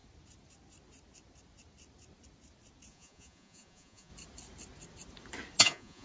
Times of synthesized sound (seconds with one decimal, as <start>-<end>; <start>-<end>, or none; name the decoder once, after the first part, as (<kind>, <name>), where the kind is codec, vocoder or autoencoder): 2.9-4.1 (vocoder, Vocos); 5.6-6.0